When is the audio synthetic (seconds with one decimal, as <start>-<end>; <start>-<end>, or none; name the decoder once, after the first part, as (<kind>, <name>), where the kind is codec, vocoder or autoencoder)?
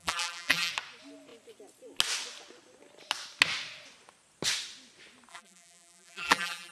0.0-0.7 (vocoder, BigVGAN v2); 5.3-6.7